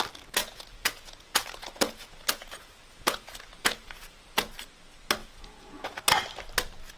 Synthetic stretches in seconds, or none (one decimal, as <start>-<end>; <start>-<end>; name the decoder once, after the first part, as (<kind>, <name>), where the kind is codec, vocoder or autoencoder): 0.4-4.5 (vocoder, Vocos); 5.2-6.0